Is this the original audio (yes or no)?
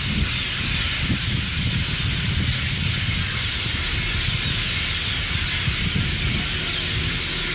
yes